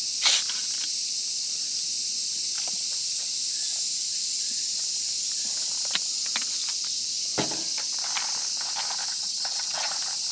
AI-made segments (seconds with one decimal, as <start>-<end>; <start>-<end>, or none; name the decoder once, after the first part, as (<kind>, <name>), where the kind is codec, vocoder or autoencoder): 9.1-9.9 (vocoder, HiFi-GAN)